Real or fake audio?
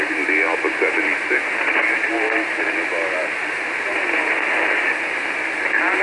real